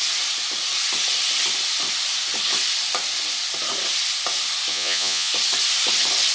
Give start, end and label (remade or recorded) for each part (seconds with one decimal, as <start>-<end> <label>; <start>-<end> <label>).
0.0-4.7 recorded; 4.7-5.3 remade; 5.3-6.3 recorded